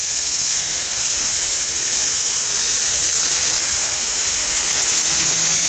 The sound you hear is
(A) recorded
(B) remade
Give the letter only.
B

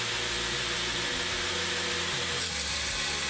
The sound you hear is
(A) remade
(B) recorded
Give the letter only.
B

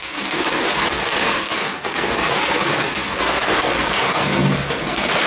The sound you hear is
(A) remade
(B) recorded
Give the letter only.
A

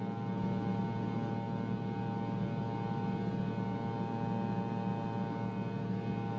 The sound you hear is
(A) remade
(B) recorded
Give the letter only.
B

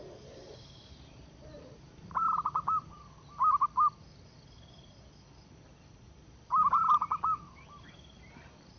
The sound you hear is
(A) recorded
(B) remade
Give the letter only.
A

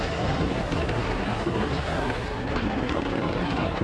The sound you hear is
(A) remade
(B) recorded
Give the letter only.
A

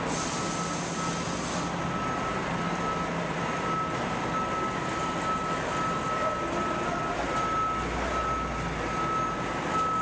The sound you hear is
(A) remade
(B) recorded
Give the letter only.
B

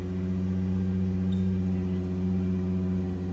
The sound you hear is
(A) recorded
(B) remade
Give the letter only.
A